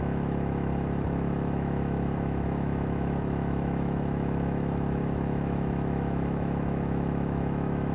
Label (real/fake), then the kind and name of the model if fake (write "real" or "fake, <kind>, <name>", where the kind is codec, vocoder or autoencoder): fake, autoencoder, DAC-VAE